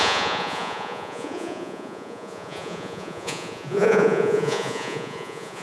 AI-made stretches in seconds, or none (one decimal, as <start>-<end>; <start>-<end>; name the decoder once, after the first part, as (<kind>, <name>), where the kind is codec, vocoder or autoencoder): 0.0-5.6 (vocoder, Vocos)